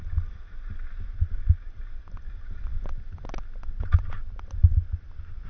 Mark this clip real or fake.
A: real